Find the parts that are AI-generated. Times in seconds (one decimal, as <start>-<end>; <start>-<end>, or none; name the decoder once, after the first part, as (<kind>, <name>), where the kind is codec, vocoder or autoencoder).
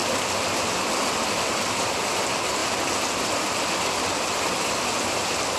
none